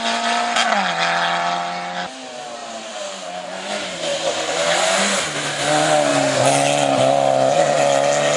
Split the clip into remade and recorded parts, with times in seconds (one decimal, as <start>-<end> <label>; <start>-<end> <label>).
0.0-2.6 recorded; 2.6-3.3 remade; 3.3-4.1 recorded; 4.1-5.0 remade; 5.0-8.4 recorded